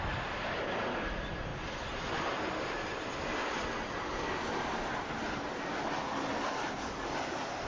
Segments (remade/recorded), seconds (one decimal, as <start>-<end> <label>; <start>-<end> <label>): 0.0-7.7 recorded